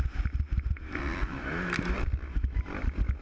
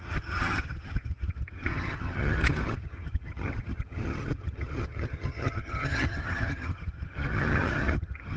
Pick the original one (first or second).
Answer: first